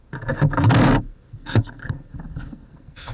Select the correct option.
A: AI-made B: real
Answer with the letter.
A